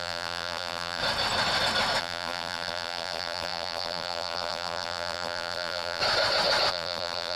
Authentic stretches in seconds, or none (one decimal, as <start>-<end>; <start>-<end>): 1.0-2.0; 6.0-6.7